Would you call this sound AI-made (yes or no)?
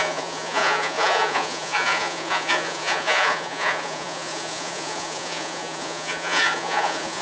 yes